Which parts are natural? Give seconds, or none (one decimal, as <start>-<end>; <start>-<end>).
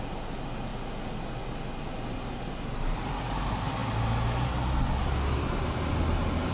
0.0-6.5